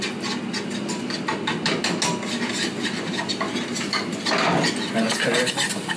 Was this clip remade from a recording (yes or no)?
no